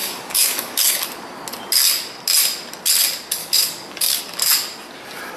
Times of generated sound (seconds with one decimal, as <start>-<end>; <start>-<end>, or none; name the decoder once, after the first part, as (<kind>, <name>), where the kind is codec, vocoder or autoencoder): 0.0-1.0 (codec, DAC); 3.4-4.2